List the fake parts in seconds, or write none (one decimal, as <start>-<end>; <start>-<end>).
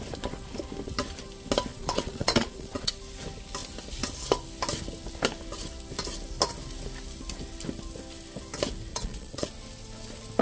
1.7-2.9; 8.9-9.5